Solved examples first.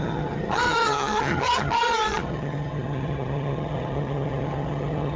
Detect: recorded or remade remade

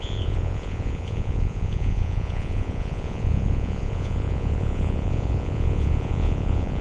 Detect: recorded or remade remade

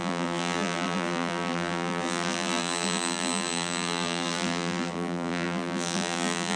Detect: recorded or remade remade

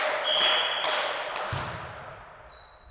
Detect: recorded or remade recorded